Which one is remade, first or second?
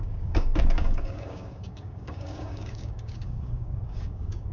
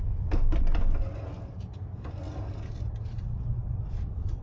first